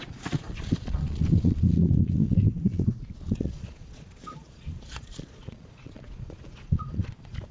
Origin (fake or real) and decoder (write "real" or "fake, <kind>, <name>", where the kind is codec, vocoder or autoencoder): fake, vocoder, Vocos